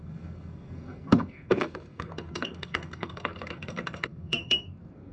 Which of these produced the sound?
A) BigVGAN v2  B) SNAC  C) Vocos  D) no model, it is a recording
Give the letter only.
B